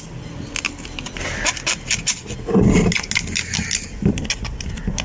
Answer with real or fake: real